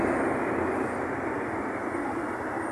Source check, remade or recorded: recorded